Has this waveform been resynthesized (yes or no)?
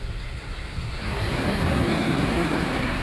yes